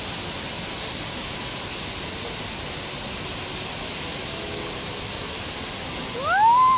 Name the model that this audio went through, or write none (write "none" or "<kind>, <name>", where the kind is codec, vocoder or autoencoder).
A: none